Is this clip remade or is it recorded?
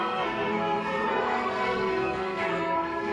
remade